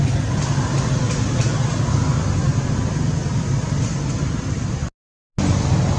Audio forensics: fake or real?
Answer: real